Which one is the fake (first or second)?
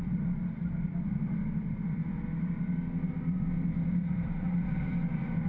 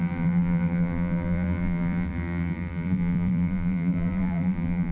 second